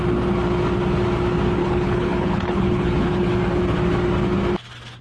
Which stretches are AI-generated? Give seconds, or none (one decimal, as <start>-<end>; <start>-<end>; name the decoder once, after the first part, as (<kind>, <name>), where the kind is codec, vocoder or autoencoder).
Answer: 1.6-3.4 (codec, HILCodec)